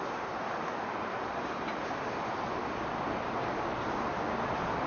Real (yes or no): yes